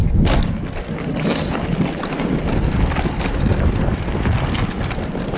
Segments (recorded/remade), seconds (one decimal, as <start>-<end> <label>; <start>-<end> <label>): 0.0-3.9 recorded; 3.9-5.4 remade